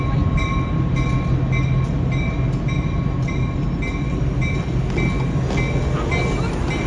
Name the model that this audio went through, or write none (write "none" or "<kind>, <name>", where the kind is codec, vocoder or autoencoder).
none